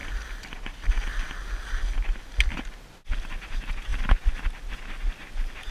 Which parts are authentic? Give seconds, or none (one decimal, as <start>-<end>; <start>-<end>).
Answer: 0.0-5.7